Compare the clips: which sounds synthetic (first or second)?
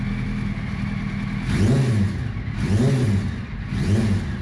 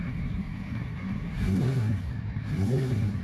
second